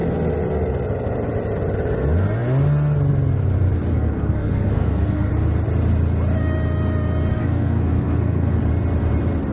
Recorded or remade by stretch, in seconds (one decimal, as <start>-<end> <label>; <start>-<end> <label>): 0.0-3.9 recorded; 3.9-5.3 remade; 5.3-7.3 recorded; 7.3-8.6 remade; 8.6-9.5 recorded